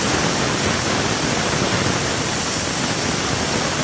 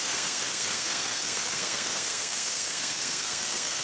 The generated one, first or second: second